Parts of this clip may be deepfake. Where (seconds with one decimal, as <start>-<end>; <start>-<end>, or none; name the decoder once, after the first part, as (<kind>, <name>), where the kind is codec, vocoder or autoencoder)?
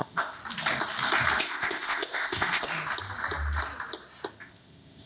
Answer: 0.0-0.4 (codec, ZipCodec); 1.4-2.7; 4.4-5.1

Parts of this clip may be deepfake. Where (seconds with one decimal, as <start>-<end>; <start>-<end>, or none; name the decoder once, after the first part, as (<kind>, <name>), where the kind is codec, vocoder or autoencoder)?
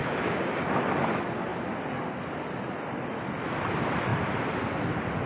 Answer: 0.0-0.7 (codec, DAC)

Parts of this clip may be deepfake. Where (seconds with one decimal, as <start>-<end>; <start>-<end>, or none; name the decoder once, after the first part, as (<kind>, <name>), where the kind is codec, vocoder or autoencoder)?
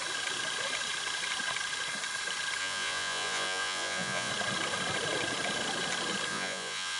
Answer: 2.6-4.3 (vocoder, Vocos); 6.3-7.0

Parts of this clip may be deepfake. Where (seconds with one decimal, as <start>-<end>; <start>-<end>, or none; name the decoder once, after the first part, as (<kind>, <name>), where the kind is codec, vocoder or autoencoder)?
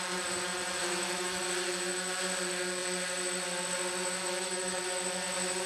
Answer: 0.8-1.4 (autoencoder, DAC-VAE); 4.2-4.8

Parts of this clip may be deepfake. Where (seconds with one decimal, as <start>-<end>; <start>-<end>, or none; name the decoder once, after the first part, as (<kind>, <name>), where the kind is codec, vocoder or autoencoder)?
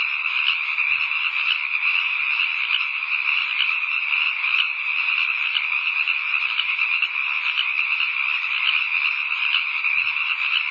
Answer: none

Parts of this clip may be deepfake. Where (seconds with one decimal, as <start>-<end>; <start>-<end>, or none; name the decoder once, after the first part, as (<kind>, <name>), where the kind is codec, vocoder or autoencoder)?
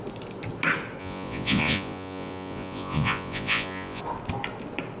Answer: 1.0-4.0 (vocoder, Vocos)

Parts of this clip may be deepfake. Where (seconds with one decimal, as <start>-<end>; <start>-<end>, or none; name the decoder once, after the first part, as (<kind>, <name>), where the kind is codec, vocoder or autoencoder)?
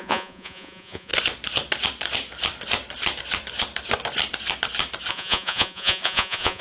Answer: 0.0-1.1 (vocoder, Vocos); 5.1-6.6